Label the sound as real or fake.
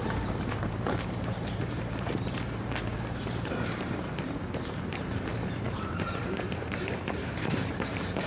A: fake